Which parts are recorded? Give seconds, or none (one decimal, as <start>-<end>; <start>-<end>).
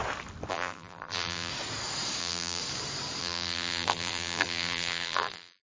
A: 0.0-0.5; 1.5-2.2; 2.6-3.2